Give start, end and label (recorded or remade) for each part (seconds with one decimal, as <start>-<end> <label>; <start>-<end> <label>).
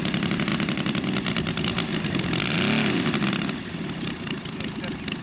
0.0-5.2 recorded